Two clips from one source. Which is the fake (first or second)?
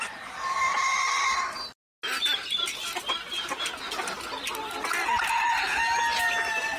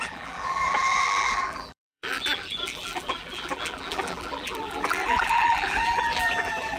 second